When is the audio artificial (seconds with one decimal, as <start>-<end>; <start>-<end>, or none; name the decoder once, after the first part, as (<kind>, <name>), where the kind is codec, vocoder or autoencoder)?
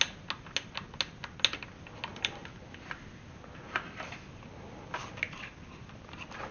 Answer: 2.1-5.5 (vocoder, BigVGAN v2)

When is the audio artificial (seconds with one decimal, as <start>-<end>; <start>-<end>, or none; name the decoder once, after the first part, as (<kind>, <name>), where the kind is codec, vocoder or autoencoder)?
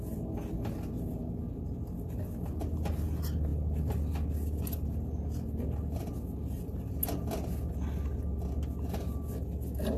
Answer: none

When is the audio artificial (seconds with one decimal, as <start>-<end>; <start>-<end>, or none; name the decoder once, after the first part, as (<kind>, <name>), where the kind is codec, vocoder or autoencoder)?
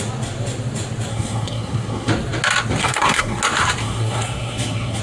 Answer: 1.1-2.1 (codec, SNAC); 2.8-3.4; 3.8-5.0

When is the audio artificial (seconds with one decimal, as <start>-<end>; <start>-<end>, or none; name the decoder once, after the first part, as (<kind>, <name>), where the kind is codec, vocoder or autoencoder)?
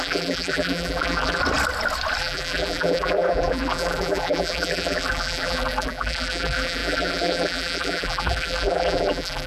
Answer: 0.0-1.4 (vocoder, BigVGAN v2); 2.2-9.5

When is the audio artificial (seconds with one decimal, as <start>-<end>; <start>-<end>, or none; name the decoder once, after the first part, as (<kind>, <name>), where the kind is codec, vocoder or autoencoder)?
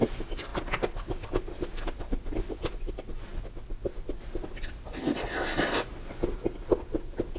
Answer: 0.5-2.9 (vocoder, BigVGAN v2)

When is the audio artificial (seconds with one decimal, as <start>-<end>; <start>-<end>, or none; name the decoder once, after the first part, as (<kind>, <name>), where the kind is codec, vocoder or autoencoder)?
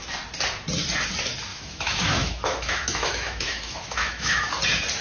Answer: 1.5-4.5 (autoencoder, DAC-VAE)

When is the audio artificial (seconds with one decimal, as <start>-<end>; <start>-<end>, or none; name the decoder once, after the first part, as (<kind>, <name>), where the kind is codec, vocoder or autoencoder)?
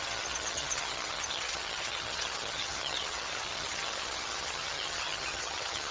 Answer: 0.0-5.9 (vocoder, HiFi-GAN)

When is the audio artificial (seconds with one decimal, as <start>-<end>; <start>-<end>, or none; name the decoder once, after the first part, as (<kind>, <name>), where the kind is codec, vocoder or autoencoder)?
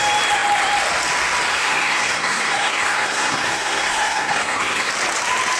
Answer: 1.5-4.9 (codec, SNAC)